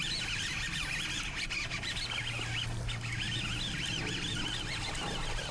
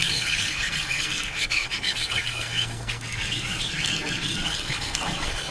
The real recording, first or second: first